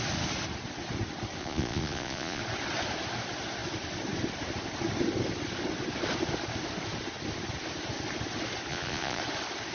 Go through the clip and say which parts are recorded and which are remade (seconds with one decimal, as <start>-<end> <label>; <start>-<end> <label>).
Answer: 0.0-1.4 recorded; 1.4-2.4 remade; 2.4-8.7 recorded; 8.7-9.2 remade; 9.2-9.7 recorded